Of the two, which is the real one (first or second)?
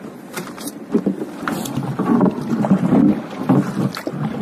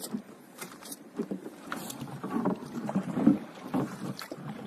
first